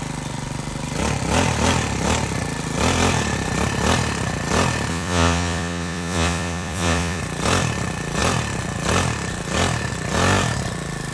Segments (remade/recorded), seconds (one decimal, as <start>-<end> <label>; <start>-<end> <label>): 0.0-4.9 recorded; 4.9-7.2 remade; 7.2-11.1 recorded